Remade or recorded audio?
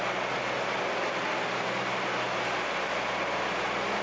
recorded